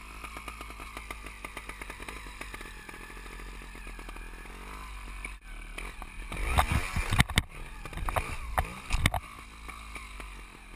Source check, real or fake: real